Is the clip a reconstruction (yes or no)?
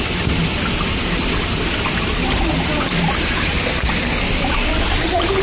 no